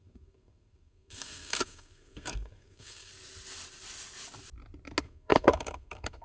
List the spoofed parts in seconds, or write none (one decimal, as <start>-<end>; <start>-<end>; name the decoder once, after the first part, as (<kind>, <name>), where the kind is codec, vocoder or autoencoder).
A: 0.0-3.1 (codec, SNAC); 5.0-6.2